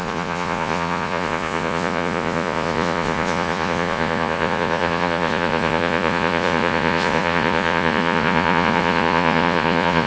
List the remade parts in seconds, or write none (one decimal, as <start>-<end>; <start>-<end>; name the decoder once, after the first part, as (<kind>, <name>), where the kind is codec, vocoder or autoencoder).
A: 0.0-10.1 (vocoder, Vocos)